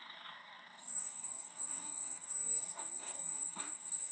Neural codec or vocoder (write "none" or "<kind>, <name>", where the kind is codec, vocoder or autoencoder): codec, DAC